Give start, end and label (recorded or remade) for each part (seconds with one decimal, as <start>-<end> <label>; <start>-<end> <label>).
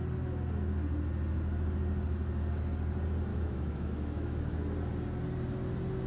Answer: 0.0-3.3 recorded; 3.3-4.6 remade; 4.6-6.1 recorded